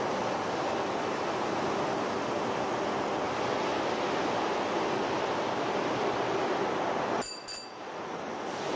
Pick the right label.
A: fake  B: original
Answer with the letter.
B